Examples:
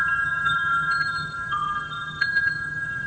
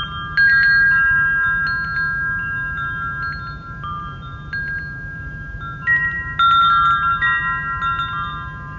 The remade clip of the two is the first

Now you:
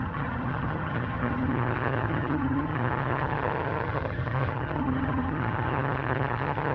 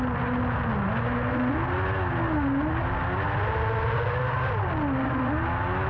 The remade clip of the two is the first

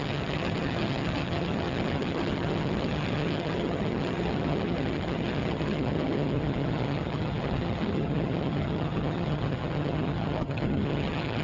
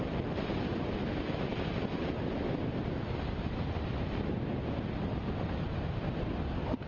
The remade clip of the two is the first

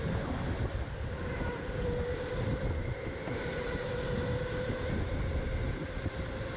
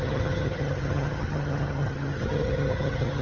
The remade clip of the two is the second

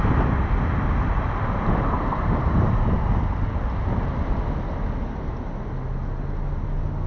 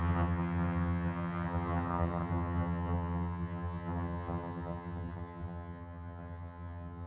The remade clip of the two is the second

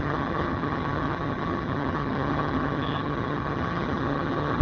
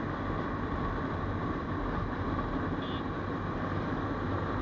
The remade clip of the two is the first